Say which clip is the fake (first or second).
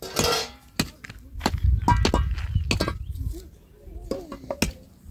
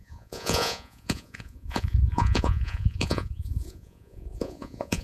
second